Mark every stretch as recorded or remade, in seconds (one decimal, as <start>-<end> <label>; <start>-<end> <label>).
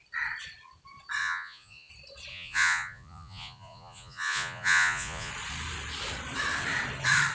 0.0-1.2 recorded; 1.2-1.9 remade; 1.9-2.3 recorded; 2.3-5.3 remade; 5.3-7.3 recorded